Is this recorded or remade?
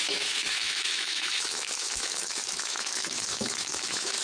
remade